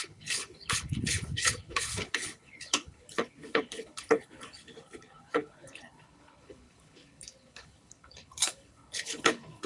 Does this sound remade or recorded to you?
remade